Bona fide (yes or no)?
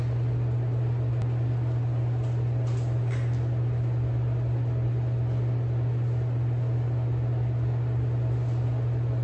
yes